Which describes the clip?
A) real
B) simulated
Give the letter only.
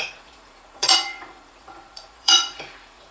B